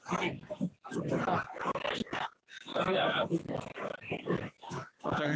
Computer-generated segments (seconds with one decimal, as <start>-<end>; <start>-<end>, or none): 2.1-2.7; 4.7-5.4